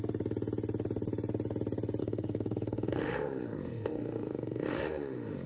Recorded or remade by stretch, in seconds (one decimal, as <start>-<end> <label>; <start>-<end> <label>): 0.0-2.0 recorded; 2.0-5.5 remade